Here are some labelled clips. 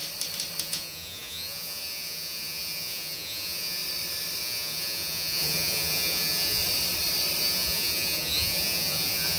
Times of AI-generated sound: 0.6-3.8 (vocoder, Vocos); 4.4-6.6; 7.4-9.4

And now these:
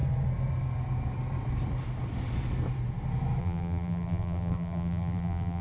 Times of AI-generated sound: 3.4-5.6 (vocoder, BigVGAN v2)

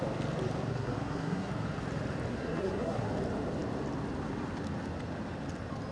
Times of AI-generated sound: 0.7-1.5 (codec, SNAC); 2.3-3.1